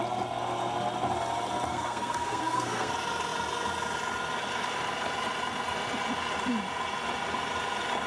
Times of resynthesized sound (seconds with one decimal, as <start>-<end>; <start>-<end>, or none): 1.7-2.9